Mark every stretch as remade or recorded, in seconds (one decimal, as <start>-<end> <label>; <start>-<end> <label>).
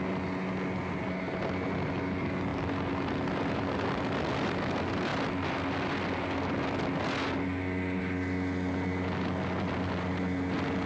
0.0-10.9 recorded